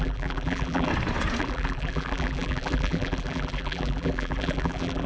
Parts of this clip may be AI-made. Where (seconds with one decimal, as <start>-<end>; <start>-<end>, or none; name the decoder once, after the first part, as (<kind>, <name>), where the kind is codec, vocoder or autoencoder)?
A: 0.0-0.9 (vocoder, BigVGAN v2); 1.4-5.1